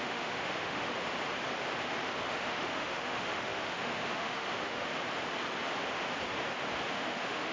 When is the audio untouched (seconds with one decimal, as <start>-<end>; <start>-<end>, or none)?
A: 0.9-2.3; 4.9-6.9